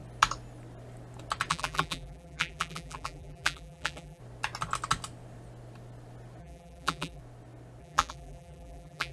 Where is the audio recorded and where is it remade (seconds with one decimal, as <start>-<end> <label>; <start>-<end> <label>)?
0.0-1.5 recorded; 1.5-4.2 remade; 4.2-6.4 recorded; 6.4-7.2 remade; 7.2-7.8 recorded; 7.8-9.1 remade